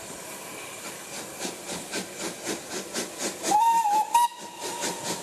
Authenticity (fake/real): real